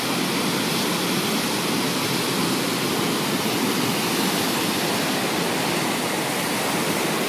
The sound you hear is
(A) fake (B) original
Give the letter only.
B